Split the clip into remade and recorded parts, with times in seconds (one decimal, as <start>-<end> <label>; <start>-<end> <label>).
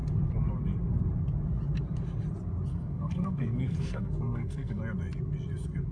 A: 0.0-2.7 recorded; 2.7-4.8 remade; 4.8-5.9 recorded